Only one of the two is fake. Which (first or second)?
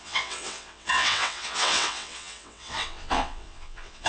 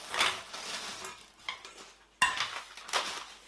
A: first